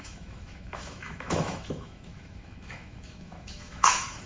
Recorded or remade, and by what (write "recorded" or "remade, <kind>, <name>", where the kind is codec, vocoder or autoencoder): remade, autoencoder, DAC-VAE